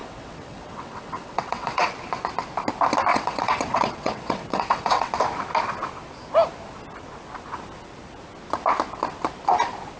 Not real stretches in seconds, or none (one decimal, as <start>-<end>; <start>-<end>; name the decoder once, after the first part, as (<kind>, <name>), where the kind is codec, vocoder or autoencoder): 0.0-1.9 (vocoder, WaveNeXt); 3.1-5.1